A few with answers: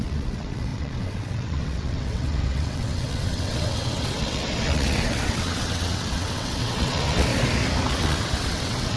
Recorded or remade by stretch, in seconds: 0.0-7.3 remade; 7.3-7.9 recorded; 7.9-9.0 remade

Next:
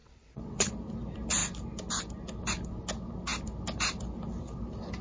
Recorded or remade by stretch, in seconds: 0.0-0.7 remade; 0.7-5.0 recorded

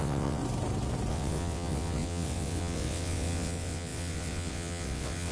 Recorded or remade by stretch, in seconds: 0.0-0.4 remade; 0.4-1.1 recorded; 1.1-5.3 remade

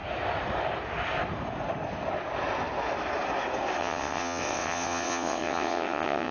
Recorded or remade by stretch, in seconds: 0.0-3.8 recorded; 3.8-6.3 remade

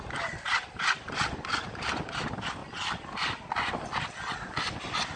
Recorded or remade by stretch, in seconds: 0.0-5.2 recorded